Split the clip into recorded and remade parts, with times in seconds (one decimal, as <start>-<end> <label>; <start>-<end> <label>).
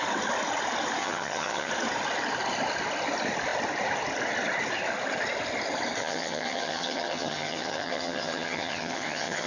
0.0-1.0 recorded; 1.0-1.7 remade; 1.7-6.0 recorded; 6.0-9.5 remade